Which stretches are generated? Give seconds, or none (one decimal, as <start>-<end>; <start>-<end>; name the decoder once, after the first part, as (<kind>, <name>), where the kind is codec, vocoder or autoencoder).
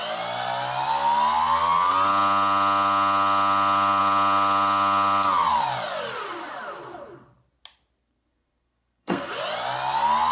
8.0-9.3 (codec, SNAC)